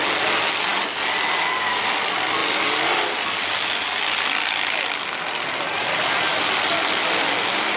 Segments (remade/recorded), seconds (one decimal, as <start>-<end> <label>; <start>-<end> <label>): 0.0-7.8 recorded